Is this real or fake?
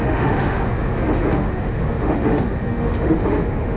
fake